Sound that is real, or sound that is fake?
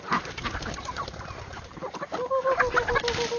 real